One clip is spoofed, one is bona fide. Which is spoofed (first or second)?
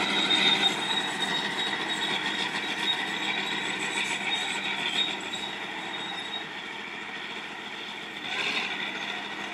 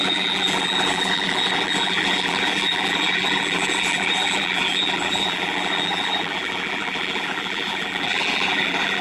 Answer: second